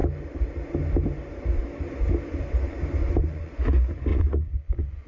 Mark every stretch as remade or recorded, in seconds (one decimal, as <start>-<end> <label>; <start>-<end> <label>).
0.0-3.0 recorded; 3.0-3.5 remade; 3.5-4.1 recorded; 4.1-5.1 remade